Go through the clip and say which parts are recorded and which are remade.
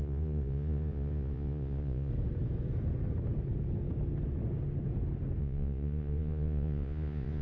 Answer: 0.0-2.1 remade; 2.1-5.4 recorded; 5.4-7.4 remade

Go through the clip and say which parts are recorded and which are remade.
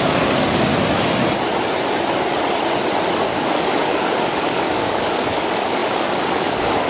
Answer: 0.0-0.7 remade; 0.7-3.2 recorded; 3.2-6.9 remade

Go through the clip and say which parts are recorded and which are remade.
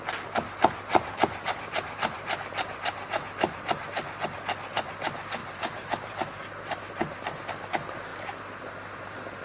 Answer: 0.0-5.4 recorded; 5.4-6.5 remade; 6.5-9.4 recorded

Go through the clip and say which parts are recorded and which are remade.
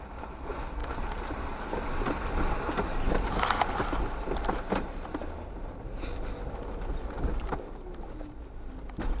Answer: 0.0-9.2 recorded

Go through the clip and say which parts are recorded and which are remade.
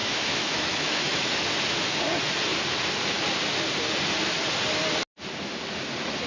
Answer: 0.0-1.3 remade; 1.3-6.3 recorded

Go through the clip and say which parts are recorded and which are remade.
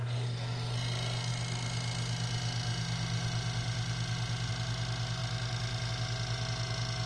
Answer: 0.0-7.1 recorded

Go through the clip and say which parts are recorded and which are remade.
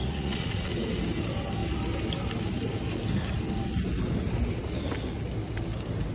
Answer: 0.0-0.7 remade; 0.7-6.1 recorded